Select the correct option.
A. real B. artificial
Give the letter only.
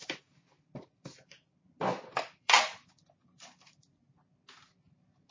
B